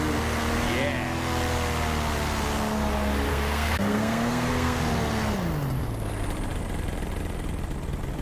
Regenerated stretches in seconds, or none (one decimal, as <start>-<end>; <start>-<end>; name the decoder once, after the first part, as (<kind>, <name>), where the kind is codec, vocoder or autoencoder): 3.3-4.8 (codec, SNAC)